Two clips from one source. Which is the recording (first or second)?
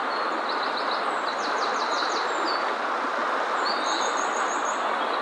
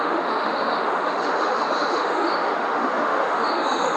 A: first